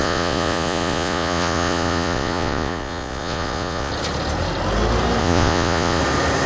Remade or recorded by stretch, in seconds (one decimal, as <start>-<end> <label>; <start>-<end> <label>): 0.0-3.9 remade; 3.9-5.2 recorded; 5.2-6.0 remade; 6.0-6.5 recorded

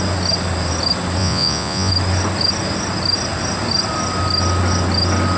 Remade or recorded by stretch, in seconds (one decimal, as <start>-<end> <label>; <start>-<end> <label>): 0.0-1.2 recorded; 1.2-1.9 remade; 1.9-5.4 recorded

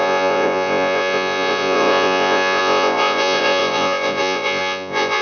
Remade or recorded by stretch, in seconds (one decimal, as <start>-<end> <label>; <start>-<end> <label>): 0.0-5.2 remade